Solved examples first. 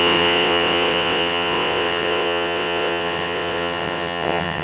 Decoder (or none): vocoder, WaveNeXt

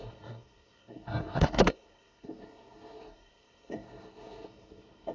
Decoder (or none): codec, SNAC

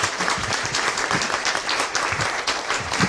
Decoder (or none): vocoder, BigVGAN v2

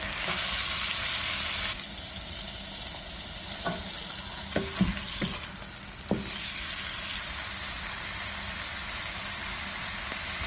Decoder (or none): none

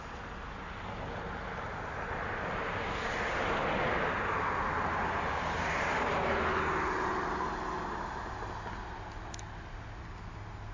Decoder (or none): none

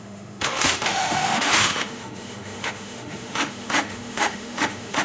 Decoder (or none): autoencoder, DAC-VAE